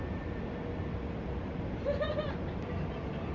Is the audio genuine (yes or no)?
yes